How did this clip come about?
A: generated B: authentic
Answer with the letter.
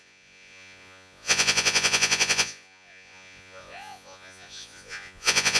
A